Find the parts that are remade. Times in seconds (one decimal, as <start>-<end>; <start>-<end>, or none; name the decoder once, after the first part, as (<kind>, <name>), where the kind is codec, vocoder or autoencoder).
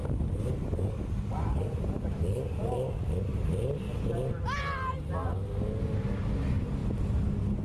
none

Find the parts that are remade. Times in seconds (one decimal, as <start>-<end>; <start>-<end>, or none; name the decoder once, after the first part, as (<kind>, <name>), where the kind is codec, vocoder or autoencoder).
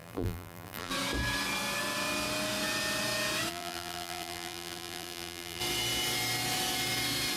0.0-0.9 (vocoder, BigVGAN v2); 3.5-5.6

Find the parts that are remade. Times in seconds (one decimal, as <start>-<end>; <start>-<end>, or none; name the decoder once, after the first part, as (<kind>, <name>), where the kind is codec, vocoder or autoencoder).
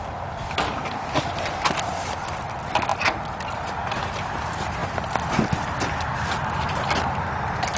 0.0-7.8 (vocoder, BigVGAN v2)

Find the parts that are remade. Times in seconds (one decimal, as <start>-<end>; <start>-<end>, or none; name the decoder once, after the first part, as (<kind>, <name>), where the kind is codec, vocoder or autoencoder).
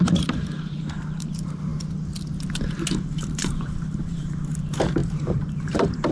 0.0-1.7 (vocoder, BigVGAN v2); 2.9-6.1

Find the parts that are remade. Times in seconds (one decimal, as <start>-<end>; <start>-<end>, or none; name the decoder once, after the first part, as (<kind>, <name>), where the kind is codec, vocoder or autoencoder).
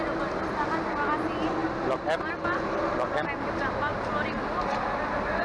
3.9-5.0 (vocoder, BigVGAN v2)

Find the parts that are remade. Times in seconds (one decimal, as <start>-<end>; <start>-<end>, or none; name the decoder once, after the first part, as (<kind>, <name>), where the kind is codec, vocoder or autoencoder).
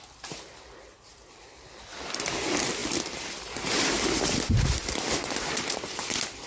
none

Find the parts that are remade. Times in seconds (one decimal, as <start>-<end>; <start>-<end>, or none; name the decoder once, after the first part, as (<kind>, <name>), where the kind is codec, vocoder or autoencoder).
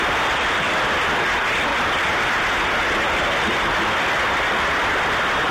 1.7-5.0 (vocoder, BigVGAN v2)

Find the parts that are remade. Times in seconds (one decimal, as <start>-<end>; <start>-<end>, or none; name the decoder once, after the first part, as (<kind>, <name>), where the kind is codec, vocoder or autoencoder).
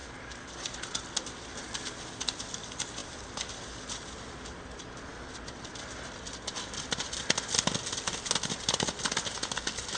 none